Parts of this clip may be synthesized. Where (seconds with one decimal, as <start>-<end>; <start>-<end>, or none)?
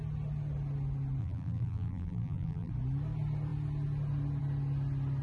1.2-2.7